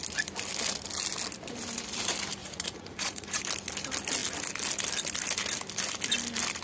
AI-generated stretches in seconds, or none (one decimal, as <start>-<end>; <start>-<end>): 2.4-3.4